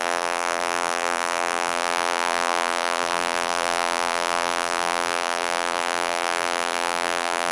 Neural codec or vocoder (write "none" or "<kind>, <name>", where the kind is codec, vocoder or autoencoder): vocoder, BigVGAN v2